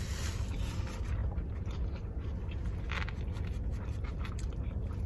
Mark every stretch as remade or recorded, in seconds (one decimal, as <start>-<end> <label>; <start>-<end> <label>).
0.0-5.1 recorded